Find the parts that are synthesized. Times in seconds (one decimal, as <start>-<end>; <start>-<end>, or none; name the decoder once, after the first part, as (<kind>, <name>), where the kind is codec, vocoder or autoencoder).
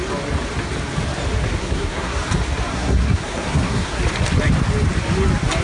1.6-2.2 (codec, SNAC); 2.7-4.0